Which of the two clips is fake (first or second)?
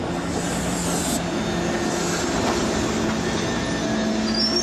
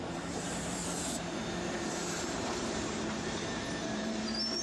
second